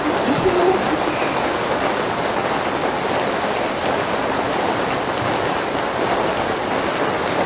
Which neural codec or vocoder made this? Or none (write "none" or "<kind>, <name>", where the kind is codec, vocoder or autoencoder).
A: none